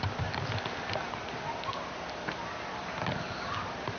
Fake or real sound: real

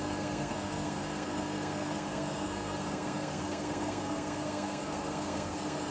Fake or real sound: fake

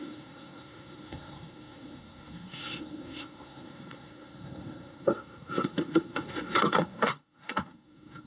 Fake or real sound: fake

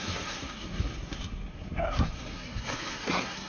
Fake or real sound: fake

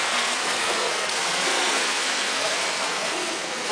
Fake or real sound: fake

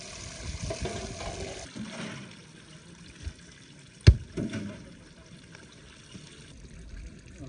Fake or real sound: real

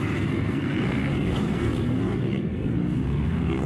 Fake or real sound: fake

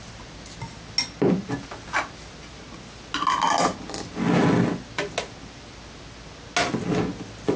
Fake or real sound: real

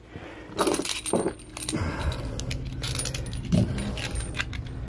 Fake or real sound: real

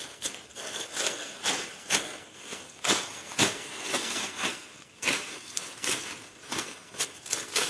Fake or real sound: fake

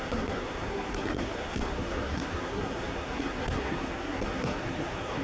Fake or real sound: fake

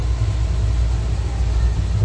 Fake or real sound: real